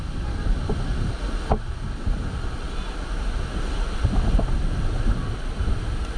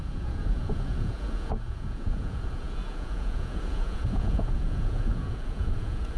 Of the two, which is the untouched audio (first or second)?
first